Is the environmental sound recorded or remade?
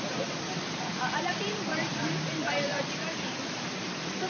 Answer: remade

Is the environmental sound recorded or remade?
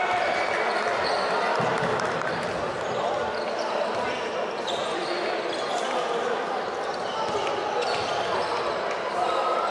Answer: recorded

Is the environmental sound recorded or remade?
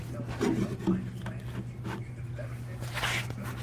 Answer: recorded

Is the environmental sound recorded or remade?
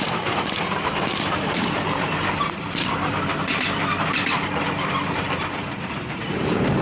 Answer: remade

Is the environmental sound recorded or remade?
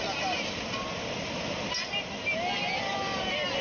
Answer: recorded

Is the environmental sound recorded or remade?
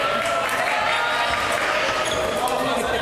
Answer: recorded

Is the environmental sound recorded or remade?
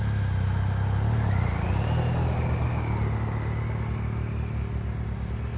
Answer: recorded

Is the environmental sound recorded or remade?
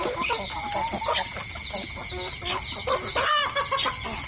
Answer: recorded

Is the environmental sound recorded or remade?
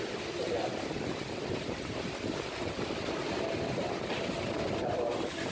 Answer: recorded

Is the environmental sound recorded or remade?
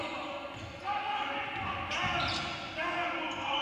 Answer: recorded